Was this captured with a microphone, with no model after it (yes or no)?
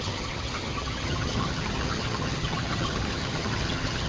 no